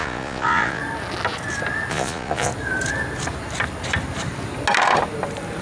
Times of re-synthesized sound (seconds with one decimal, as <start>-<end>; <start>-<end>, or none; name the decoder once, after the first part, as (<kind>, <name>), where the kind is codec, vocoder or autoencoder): 0.0-0.8 (vocoder, Vocos); 1.9-2.5

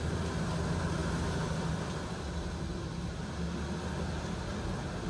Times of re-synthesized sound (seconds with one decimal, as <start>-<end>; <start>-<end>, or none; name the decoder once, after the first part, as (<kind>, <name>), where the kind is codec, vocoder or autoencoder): none